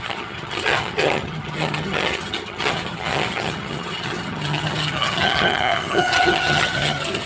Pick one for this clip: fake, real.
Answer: fake